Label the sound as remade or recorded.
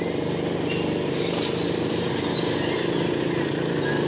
recorded